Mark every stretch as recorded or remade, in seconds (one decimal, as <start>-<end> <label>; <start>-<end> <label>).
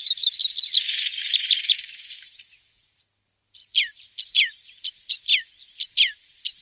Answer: 0.0-0.8 recorded; 0.8-6.6 remade